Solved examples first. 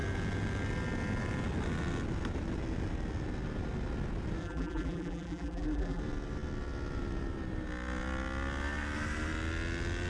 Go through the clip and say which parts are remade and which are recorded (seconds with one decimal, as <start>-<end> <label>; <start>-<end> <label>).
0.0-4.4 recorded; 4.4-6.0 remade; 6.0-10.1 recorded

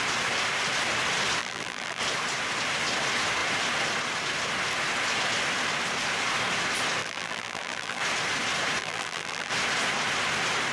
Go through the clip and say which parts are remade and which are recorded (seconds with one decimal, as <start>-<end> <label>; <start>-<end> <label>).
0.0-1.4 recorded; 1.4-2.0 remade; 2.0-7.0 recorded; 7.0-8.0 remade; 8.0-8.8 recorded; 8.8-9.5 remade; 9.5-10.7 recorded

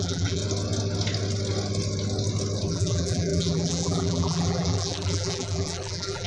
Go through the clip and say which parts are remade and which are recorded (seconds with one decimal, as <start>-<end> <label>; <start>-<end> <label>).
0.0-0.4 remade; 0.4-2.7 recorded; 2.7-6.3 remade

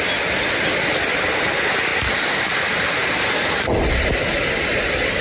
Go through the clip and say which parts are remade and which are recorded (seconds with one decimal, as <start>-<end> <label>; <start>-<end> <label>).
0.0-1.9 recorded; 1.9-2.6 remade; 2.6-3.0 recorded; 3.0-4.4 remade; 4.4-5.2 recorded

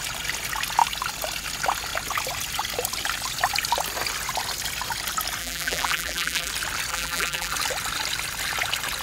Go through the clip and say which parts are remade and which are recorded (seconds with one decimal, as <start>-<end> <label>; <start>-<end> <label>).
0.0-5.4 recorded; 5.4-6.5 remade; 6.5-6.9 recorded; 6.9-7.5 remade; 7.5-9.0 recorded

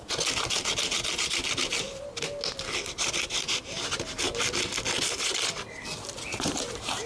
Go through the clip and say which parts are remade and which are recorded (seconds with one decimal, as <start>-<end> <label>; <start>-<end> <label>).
0.0-1.7 remade; 1.7-6.0 recorded; 6.0-7.1 remade

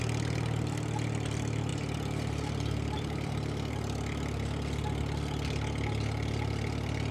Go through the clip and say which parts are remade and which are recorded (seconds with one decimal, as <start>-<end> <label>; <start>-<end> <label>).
0.0-1.7 recorded; 1.7-3.7 remade; 3.7-7.1 recorded

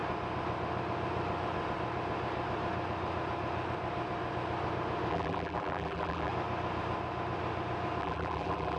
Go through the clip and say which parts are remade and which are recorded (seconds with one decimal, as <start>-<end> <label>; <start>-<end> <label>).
0.0-5.1 recorded; 5.1-6.3 remade; 6.3-8.0 recorded; 8.0-8.8 remade